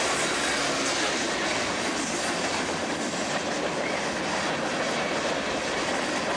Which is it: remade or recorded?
recorded